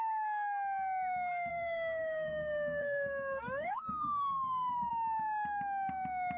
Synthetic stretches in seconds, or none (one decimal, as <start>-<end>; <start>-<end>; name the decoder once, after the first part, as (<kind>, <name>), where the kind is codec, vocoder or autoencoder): 1.5-4.9 (codec, SNAC)